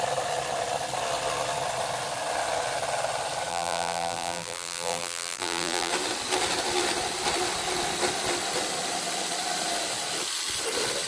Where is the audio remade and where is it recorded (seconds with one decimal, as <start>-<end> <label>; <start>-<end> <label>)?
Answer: 0.0-3.5 recorded; 3.5-5.9 remade; 5.9-11.1 recorded